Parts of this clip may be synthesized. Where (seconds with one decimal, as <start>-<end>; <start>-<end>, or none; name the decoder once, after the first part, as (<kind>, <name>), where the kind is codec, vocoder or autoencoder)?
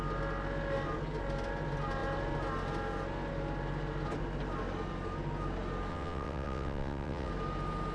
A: 5.9-7.3 (vocoder, WaveNeXt)